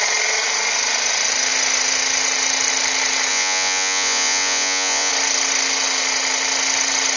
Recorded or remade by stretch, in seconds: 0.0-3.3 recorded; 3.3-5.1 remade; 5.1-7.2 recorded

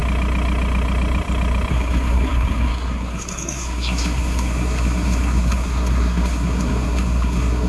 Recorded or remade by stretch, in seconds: 0.0-1.7 recorded; 1.7-7.7 remade

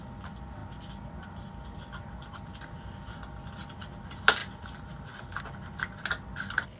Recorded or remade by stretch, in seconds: 0.0-6.8 recorded

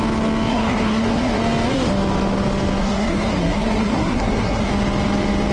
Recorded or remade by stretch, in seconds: 0.0-0.5 recorded; 0.5-1.4 remade; 1.4-2.8 recorded; 2.8-4.7 remade; 4.7-5.5 recorded

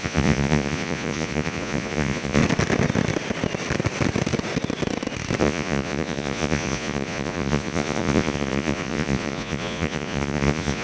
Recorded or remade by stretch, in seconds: 0.0-2.4 remade; 2.4-5.4 recorded; 5.4-10.8 remade

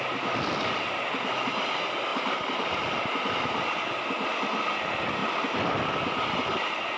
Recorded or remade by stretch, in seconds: 0.0-7.0 recorded